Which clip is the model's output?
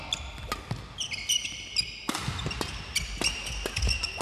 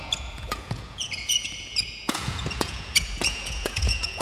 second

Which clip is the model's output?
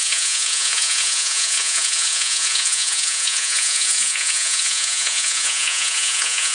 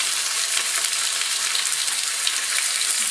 first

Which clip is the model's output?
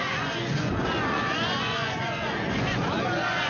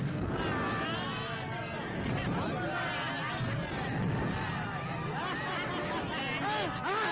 first